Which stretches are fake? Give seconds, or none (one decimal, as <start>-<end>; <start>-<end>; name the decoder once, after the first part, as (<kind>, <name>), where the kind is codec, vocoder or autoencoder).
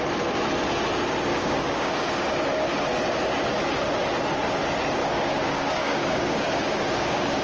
1.3-2.3 (codec, DAC); 5.0-7.4